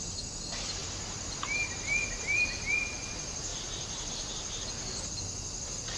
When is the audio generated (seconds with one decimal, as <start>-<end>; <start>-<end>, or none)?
3.5-4.1